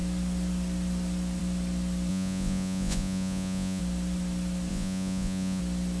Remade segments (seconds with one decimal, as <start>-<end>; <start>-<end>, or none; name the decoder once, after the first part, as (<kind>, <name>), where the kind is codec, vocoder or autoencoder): 2.1-3.8 (vocoder, Vocos); 4.7-5.6